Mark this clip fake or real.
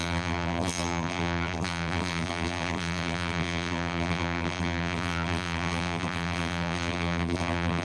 fake